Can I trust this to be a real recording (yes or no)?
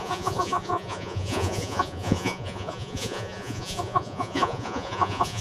no